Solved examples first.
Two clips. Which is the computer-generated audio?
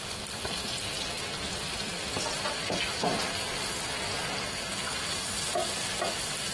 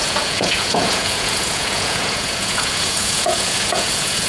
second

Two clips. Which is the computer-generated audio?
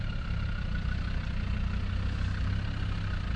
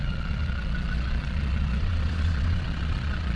second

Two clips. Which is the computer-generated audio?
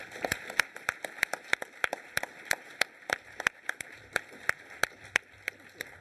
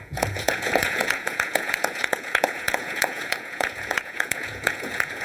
second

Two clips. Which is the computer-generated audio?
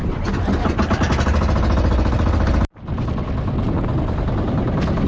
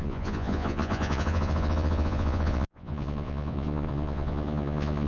second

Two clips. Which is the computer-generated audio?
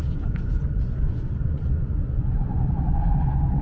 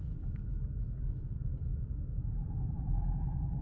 first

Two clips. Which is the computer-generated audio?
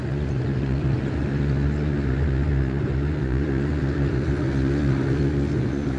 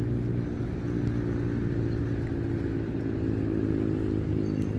first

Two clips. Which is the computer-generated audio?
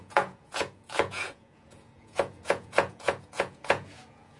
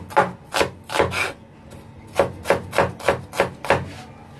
first